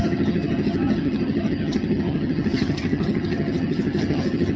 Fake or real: fake